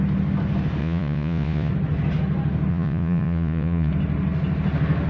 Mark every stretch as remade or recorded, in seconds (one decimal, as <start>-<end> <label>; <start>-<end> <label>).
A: 0.0-0.8 recorded; 0.8-1.7 remade; 1.7-2.7 recorded; 2.7-3.9 remade; 3.9-5.1 recorded